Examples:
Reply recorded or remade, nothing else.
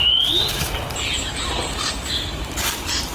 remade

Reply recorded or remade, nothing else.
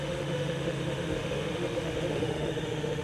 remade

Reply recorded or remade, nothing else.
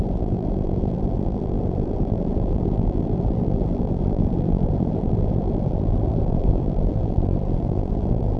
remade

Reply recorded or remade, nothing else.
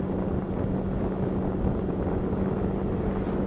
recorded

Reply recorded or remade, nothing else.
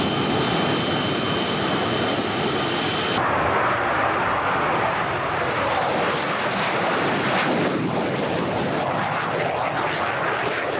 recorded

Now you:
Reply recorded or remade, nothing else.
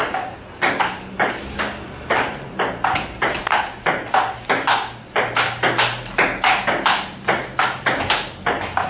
recorded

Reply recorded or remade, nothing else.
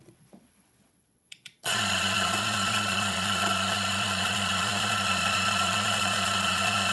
remade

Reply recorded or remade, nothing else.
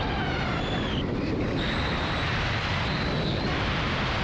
recorded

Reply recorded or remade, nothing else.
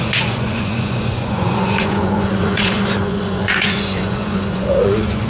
remade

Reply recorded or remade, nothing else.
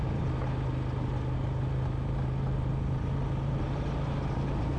recorded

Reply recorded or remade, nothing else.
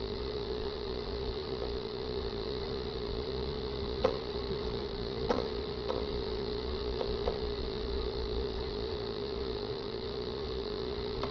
remade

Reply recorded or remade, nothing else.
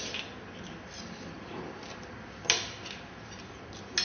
recorded